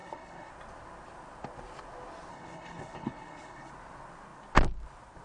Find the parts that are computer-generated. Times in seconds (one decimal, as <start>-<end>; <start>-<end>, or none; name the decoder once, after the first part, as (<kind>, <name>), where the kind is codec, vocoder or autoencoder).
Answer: 0.0-0.5 (codec, HILCodec); 2.3-3.7